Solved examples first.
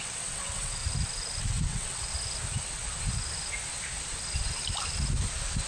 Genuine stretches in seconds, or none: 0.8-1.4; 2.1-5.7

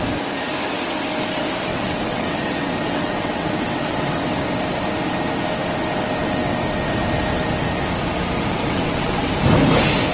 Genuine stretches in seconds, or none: 0.0-1.7; 4.2-8.5; 9.3-10.1

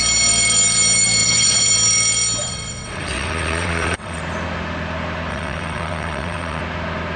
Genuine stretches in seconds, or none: 0.0-1.2; 1.7-2.4; 4.2-5.3; 6.6-7.2

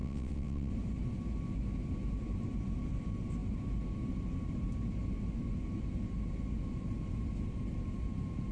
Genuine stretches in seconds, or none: 0.7-8.5

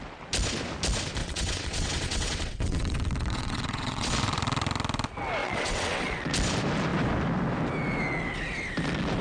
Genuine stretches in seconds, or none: 0.0-1.2; 4.1-5.4; 6.3-9.2

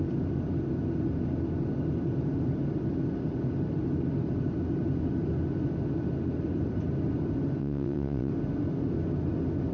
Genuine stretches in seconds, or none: 0.0-7.6; 8.3-9.7

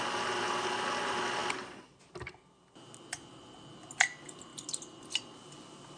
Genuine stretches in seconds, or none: 0.0-6.0

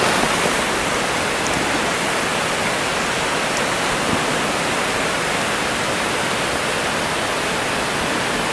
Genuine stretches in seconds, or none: 0.0-8.5